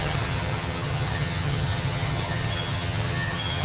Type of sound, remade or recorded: remade